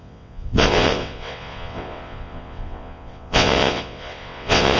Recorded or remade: remade